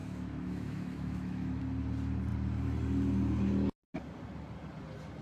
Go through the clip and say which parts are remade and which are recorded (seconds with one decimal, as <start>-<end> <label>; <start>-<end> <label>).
0.0-1.6 remade; 1.6-5.2 recorded